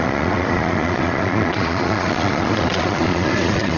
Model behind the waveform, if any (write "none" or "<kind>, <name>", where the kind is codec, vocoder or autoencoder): vocoder, Vocos